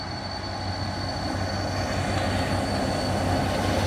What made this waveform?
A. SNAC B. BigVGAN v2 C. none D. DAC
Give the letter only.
C